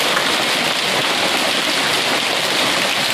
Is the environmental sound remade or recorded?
recorded